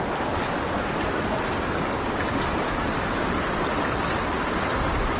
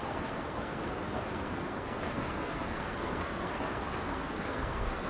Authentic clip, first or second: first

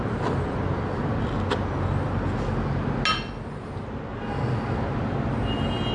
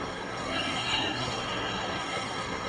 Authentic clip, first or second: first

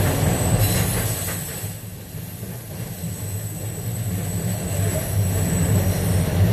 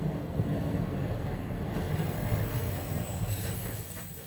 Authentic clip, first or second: first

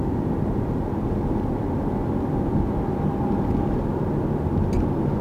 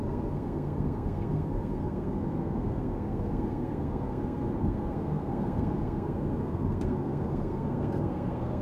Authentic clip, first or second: first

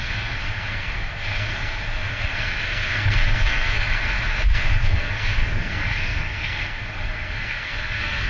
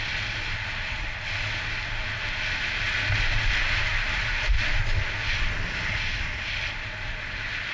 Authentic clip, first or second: second